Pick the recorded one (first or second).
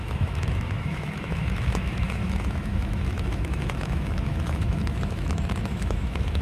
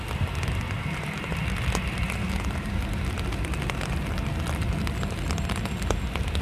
second